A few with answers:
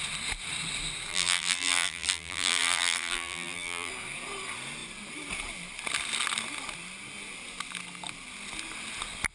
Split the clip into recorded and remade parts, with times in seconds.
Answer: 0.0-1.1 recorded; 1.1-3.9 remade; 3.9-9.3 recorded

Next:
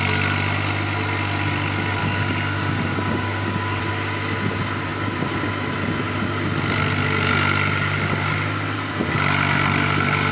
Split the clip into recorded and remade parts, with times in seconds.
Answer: 0.0-2.0 recorded; 2.0-3.8 remade; 3.8-10.3 recorded

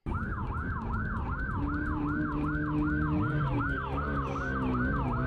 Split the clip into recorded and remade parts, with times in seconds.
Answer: 0.0-5.3 recorded

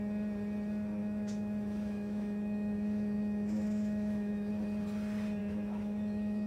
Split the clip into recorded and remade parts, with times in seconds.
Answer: 0.0-1.0 recorded; 1.0-4.5 remade; 4.5-5.4 recorded; 5.4-6.5 remade

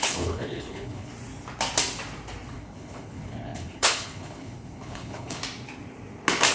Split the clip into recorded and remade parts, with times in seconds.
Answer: 0.0-1.1 remade; 1.1-2.5 recorded; 2.5-5.4 remade; 5.4-6.5 recorded

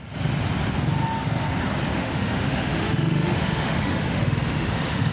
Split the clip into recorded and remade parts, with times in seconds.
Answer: 0.0-1.9 recorded; 1.9-5.1 remade